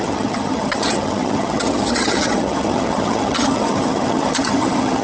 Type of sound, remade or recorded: remade